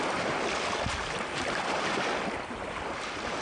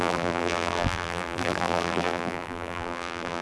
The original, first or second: first